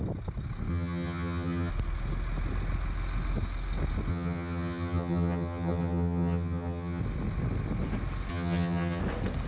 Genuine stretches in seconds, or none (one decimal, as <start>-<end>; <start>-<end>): 0.0-0.7; 1.7-4.1; 7.0-8.3; 9.0-9.5